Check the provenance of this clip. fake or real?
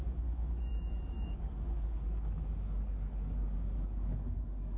fake